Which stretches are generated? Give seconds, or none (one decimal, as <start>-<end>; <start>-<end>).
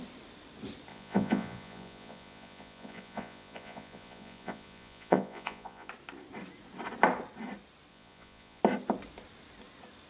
0.9-5.9; 7.9-8.6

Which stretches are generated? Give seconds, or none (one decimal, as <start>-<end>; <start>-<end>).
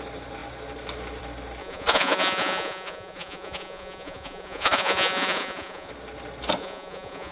1.6-5.9; 6.6-7.3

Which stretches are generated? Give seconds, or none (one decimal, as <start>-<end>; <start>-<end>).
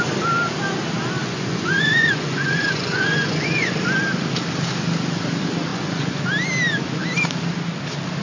1.2-3.7; 5.7-6.2